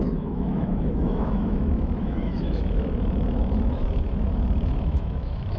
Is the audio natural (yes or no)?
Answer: no